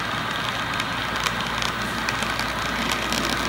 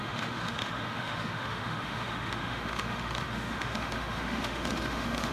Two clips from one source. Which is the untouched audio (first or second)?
first